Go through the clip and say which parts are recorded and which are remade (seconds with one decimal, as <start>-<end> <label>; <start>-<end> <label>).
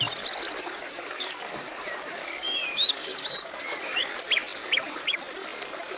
0.0-0.5 recorded; 0.5-4.1 remade; 4.1-4.6 recorded; 4.6-5.2 remade; 5.2-6.0 recorded